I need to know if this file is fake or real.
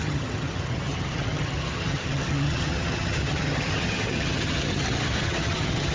fake